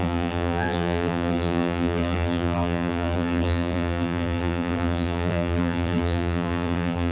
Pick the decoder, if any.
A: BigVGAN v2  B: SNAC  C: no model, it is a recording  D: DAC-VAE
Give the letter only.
A